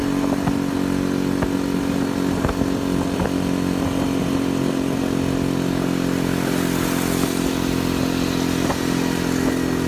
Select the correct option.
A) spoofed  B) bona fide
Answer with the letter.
B